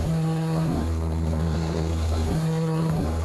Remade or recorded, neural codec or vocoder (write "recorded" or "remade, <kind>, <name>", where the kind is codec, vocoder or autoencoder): remade, codec, SNAC